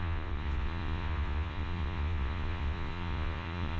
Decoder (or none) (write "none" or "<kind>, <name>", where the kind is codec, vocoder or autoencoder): vocoder, Vocos